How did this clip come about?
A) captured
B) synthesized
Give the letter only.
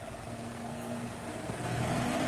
B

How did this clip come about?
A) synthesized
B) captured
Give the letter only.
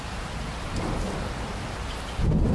B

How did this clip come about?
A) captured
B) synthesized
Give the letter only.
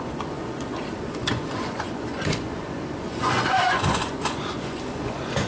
B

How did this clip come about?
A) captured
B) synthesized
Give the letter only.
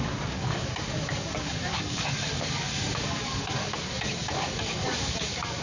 B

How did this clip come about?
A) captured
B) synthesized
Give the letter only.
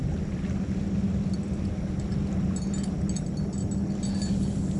A